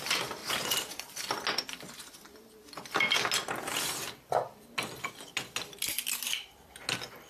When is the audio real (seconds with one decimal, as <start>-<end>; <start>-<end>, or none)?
0.0-7.3